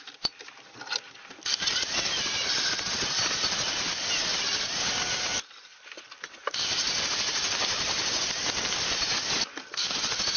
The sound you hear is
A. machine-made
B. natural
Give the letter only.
A